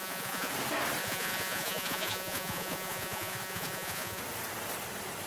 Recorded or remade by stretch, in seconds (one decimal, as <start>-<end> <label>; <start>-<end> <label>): 0.0-0.5 remade; 0.5-1.0 recorded; 1.0-4.2 remade; 4.2-5.3 recorded